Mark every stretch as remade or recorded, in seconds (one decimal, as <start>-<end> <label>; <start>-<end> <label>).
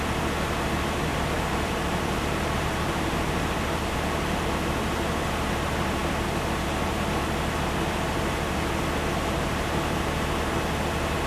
0.0-1.1 recorded; 1.1-3.5 remade; 3.5-11.3 recorded